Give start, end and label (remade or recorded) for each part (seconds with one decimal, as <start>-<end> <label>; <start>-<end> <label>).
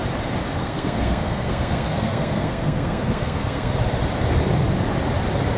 0.0-0.6 recorded; 0.6-3.7 remade; 3.7-5.6 recorded